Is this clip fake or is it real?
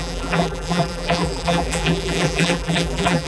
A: fake